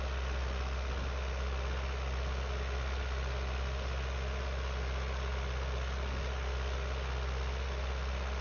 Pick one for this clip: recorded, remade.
recorded